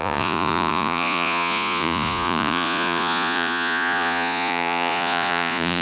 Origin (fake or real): fake